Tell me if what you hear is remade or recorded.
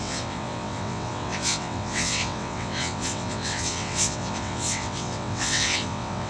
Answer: remade